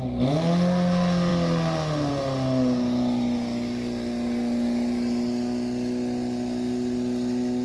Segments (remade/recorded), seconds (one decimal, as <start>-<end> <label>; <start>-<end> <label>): 0.0-7.6 recorded